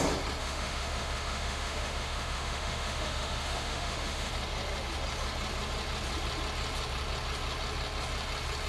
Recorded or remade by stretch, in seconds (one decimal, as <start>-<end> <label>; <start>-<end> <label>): 0.0-0.4 recorded; 0.4-4.3 remade; 4.3-8.7 recorded